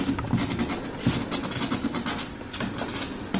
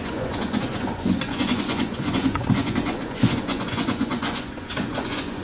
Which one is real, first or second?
first